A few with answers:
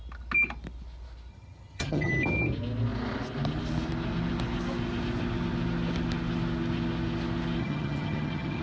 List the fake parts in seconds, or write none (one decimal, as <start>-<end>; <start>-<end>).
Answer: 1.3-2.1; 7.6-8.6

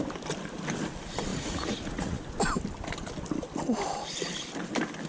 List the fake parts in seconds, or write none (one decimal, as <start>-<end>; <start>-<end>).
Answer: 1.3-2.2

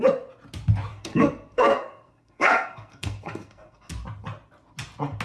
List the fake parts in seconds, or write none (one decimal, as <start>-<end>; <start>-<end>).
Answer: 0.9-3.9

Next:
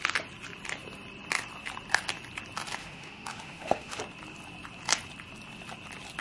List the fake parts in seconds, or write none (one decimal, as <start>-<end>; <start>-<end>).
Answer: 2.8-4.0

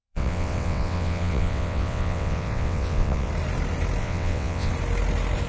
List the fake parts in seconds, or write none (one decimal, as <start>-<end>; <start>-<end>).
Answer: 0.0-3.3; 4.0-4.7

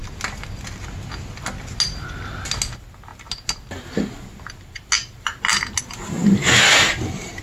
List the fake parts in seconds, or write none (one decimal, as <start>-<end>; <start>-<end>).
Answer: none

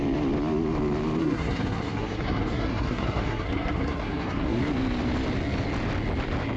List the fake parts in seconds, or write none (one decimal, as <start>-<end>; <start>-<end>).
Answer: 1.2-4.6